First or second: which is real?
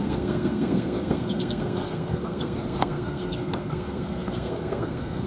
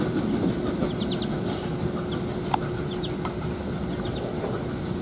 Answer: second